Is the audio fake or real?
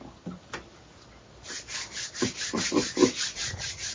real